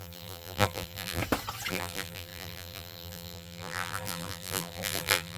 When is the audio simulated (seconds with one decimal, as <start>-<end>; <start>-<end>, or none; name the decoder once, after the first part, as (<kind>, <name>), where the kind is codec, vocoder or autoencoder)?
0.0-1.2 (vocoder, BigVGAN v2); 1.7-5.4